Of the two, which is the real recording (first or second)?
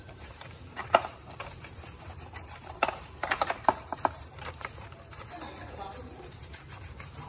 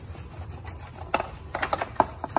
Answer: second